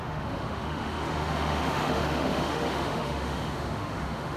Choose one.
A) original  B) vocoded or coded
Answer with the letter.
B